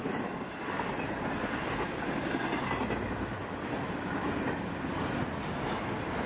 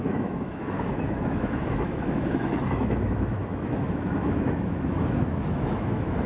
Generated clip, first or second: second